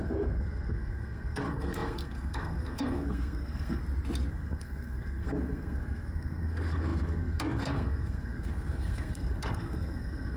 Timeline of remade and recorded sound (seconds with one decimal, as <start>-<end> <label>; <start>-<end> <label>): 0.0-3.8 remade; 3.8-4.3 recorded; 4.3-10.4 remade